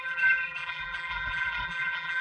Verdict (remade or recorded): remade